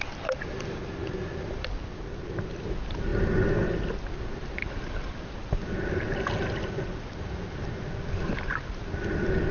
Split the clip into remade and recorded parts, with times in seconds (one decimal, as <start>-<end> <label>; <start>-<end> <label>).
0.0-9.5 recorded

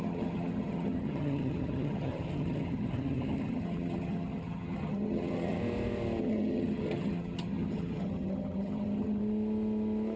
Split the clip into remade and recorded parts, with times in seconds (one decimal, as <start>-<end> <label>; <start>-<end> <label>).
0.0-5.6 remade; 5.6-6.2 recorded; 6.2-9.2 remade; 9.2-10.2 recorded